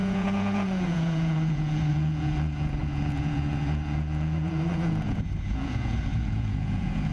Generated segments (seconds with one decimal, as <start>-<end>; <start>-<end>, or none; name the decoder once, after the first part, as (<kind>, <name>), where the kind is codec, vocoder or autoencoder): 0.0-7.1 (vocoder, Vocos)